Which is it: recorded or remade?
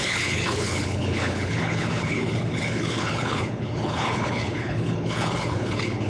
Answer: remade